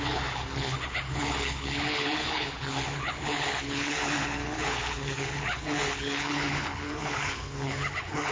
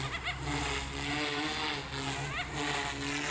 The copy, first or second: first